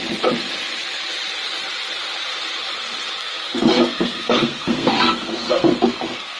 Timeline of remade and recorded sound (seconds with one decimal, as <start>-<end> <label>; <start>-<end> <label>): 0.0-3.2 recorded; 3.2-6.4 remade